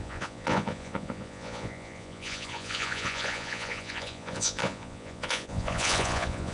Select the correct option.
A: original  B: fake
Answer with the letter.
B